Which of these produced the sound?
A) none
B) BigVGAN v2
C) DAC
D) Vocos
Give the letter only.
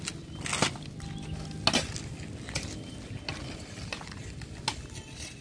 A